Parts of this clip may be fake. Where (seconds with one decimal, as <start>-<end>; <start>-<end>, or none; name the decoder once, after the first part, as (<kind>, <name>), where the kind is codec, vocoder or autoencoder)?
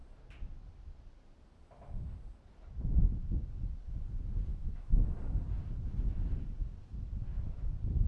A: 4.5-5.2 (autoencoder, DAC-VAE)